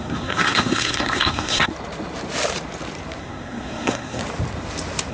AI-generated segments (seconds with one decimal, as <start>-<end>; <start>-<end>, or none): 0.0-1.7; 3.2-4.2